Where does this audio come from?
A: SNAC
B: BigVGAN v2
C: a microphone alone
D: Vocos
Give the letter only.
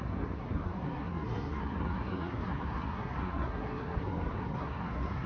A